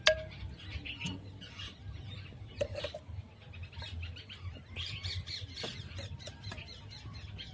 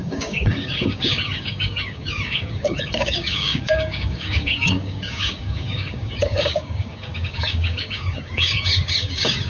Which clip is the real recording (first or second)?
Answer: first